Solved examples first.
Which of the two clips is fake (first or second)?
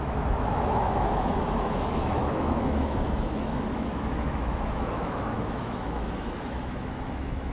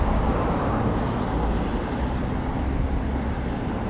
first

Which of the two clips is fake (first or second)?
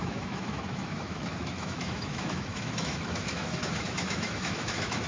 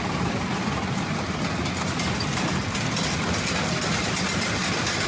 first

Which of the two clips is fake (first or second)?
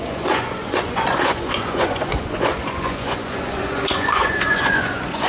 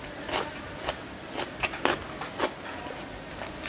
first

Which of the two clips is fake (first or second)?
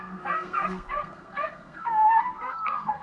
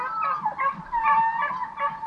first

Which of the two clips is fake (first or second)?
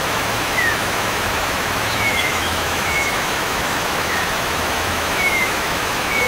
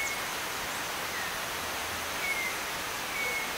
first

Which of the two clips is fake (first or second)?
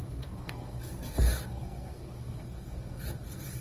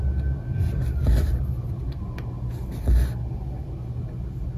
first